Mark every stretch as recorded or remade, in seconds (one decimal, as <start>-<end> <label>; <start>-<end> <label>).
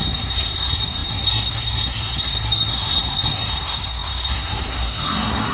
0.0-5.5 remade